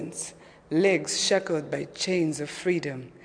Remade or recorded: recorded